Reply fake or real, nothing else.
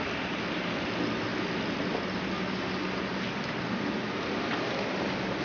real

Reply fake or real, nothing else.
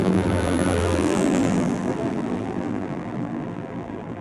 fake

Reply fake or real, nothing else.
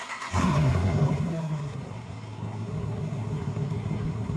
fake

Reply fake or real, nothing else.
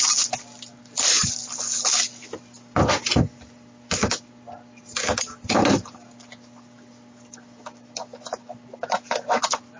real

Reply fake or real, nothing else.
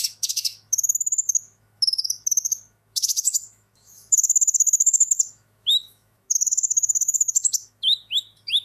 fake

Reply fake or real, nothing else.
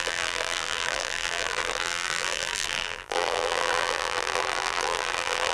fake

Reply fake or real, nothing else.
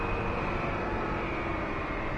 real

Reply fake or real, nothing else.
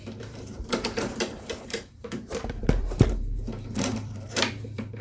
fake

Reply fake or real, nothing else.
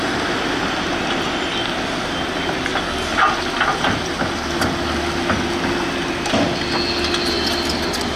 real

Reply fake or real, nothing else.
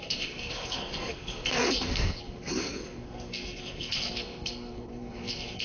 fake